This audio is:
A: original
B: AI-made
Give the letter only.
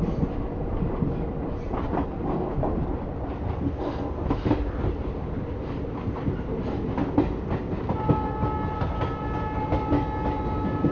A